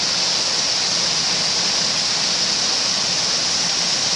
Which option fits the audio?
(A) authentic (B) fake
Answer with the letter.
A